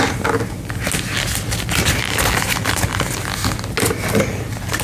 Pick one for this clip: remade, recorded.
recorded